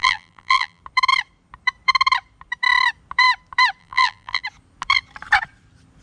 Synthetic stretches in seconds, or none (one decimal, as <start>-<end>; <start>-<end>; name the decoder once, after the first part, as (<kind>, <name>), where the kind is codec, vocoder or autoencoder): 0.0-0.8 (vocoder, BigVGAN v2); 3.8-4.4

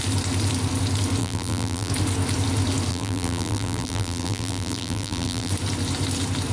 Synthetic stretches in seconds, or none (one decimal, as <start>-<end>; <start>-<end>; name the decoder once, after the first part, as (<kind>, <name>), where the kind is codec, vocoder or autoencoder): 1.2-1.9 (vocoder, BigVGAN v2); 2.9-5.5

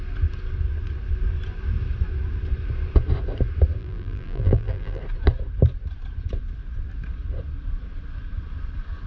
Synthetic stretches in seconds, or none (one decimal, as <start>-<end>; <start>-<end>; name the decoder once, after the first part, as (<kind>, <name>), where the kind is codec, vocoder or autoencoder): 3.8-5.0 (vocoder, BigVGAN v2)

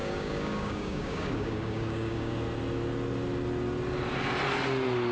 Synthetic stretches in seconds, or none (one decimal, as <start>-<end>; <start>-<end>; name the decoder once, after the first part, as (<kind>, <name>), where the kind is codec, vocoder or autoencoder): 0.0-2.3 (codec, DAC)

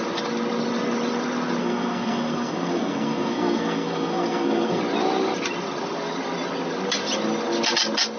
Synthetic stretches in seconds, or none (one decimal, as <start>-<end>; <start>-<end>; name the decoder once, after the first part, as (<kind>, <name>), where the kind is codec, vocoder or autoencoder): 1.6-4.8 (codec, SNAC)

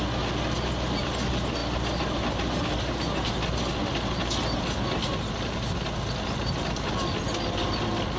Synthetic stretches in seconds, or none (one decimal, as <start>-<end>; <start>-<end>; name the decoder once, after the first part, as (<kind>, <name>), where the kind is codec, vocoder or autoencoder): none

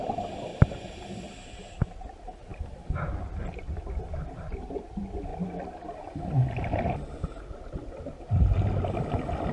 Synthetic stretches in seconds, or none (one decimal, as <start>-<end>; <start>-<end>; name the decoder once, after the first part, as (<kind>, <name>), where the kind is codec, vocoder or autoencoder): 0.5-1.3 (vocoder, BigVGAN v2)